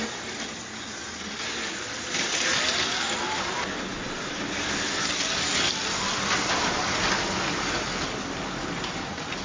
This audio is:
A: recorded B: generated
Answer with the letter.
A